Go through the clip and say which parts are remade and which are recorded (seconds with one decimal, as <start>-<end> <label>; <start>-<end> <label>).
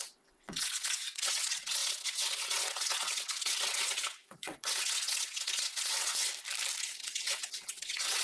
0.0-6.3 remade; 6.3-6.8 recorded; 6.8-8.2 remade